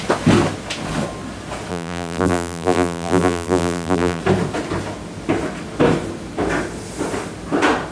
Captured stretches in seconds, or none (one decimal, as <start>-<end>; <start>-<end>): 0.0-1.7; 4.2-7.9